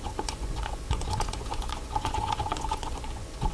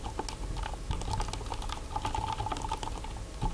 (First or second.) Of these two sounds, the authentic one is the second